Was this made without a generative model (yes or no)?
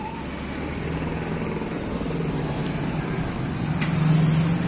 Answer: yes